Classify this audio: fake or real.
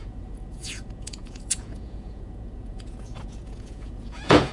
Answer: fake